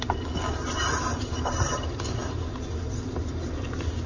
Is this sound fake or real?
real